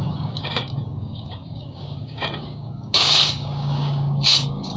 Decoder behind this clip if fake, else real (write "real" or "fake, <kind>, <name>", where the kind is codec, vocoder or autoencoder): fake, codec, DAC